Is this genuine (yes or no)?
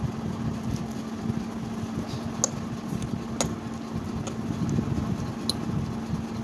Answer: yes